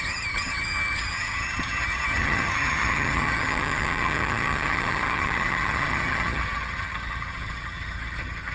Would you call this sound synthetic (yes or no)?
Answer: yes